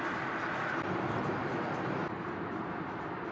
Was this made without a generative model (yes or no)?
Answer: yes